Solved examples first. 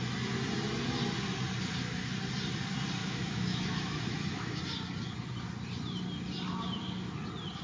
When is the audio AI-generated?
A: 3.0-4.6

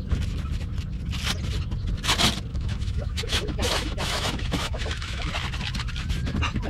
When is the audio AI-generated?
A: 2.5-5.3

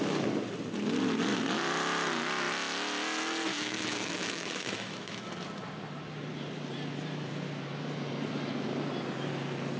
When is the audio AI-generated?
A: 3.5-5.3

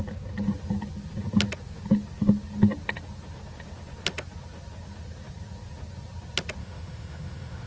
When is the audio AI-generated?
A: 6.6-7.7

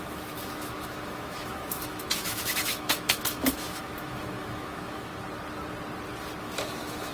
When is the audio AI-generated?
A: 0.0-5.1; 6.4-7.1

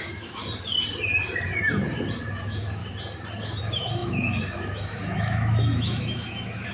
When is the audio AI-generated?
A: 0.0-0.4; 2.4-2.8; 3.6-6.7

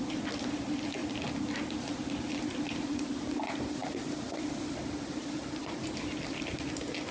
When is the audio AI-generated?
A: none

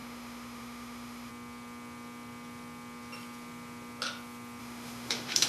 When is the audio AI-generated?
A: 0.0-1.3; 4.6-5.5